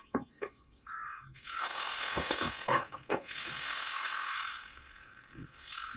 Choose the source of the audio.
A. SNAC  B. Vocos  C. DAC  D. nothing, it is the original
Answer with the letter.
A